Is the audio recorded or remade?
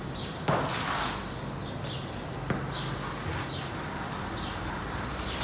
recorded